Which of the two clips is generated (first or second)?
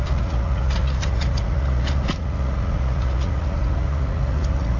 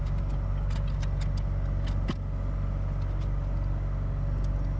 first